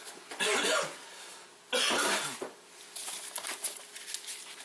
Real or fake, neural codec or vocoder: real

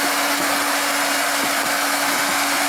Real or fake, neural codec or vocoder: real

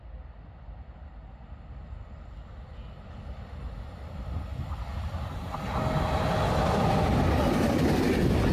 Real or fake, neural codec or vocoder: real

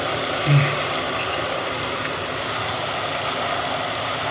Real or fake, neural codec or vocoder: real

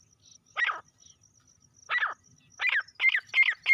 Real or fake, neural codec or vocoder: real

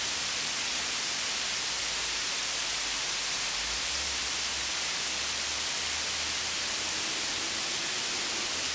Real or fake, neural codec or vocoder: real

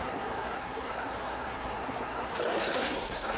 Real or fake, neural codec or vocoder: fake, codec, SNAC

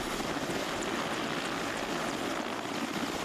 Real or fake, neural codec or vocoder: real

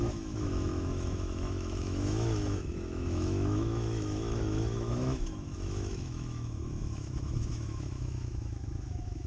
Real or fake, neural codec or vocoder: fake, autoencoder, DAC-VAE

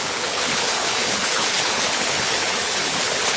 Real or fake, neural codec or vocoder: fake, codec, HILCodec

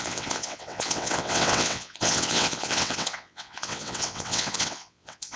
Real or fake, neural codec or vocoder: fake, vocoder, WaveNeXt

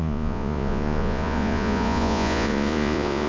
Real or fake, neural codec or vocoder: fake, vocoder, Vocos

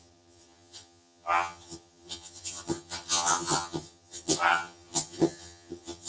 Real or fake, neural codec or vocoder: fake, vocoder, HiFi-GAN